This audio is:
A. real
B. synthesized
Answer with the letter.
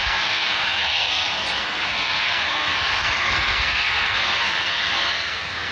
B